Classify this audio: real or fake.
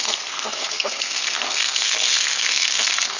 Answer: fake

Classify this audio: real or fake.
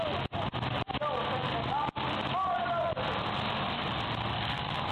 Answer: real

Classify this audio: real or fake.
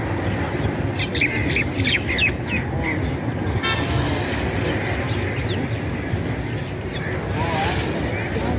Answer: real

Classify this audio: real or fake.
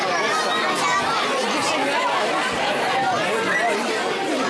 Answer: real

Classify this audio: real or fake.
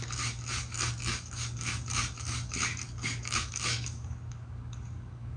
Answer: fake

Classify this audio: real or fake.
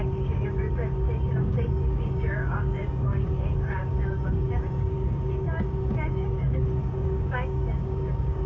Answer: fake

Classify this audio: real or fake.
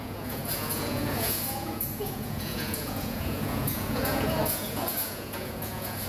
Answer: fake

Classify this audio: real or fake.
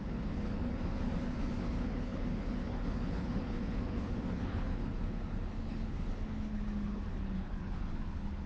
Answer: fake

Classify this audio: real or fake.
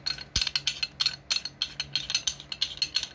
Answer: real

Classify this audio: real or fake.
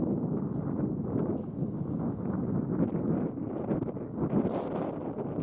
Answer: real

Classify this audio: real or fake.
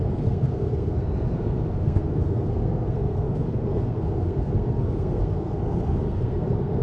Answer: fake